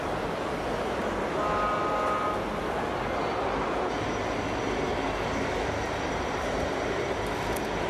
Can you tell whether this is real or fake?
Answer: real